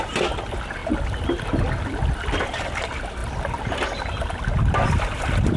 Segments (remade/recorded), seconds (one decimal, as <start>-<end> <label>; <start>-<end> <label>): 0.0-5.6 recorded